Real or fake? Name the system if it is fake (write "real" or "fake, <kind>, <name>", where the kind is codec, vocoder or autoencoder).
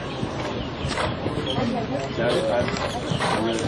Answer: real